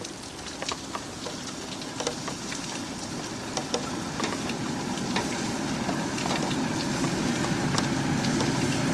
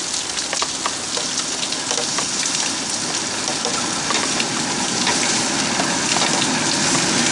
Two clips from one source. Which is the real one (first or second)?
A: second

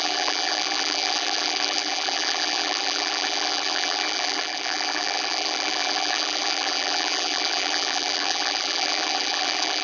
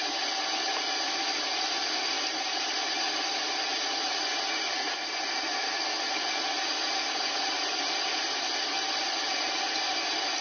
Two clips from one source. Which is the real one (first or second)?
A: second